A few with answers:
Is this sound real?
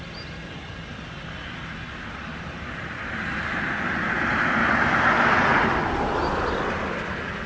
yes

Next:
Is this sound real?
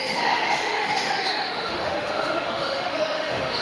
no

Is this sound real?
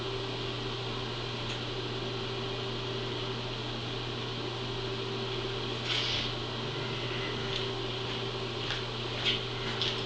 yes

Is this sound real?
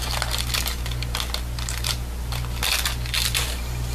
yes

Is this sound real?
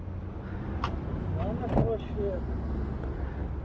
yes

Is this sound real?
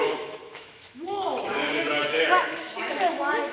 no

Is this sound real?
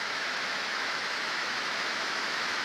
no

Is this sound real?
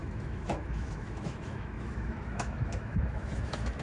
no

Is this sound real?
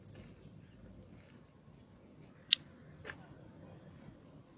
yes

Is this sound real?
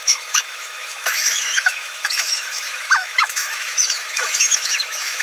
no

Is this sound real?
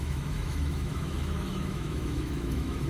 no